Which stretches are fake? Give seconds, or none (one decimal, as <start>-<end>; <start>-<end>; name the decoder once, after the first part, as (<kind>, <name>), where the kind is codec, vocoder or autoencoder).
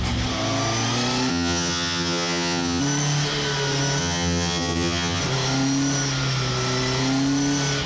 1.3-2.8 (vocoder, HiFi-GAN); 4.0-5.2